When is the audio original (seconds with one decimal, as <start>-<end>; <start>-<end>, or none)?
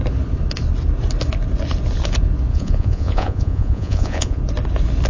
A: 0.0-2.5; 4.4-5.1